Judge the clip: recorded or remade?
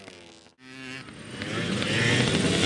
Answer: recorded